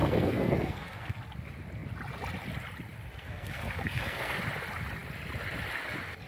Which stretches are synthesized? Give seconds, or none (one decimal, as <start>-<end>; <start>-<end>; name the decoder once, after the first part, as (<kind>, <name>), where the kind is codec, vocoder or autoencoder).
0.0-1.2 (codec, SNAC); 3.2-4.4